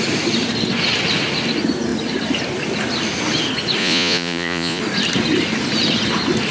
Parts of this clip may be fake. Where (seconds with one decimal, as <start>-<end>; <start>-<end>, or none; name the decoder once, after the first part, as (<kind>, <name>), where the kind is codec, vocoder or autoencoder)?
3.8-4.8 (vocoder, Vocos)